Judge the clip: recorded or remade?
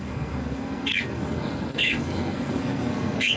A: remade